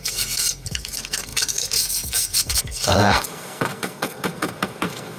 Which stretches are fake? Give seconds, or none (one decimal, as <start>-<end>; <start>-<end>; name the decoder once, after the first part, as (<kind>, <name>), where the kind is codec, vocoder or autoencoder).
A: 0.0-5.2 (codec, SNAC)